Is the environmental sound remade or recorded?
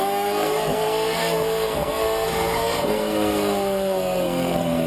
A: remade